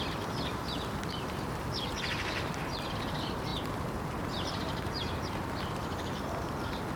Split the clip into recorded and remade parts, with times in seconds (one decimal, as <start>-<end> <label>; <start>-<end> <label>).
0.0-5.8 remade; 5.8-7.0 recorded